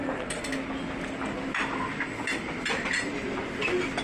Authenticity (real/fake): real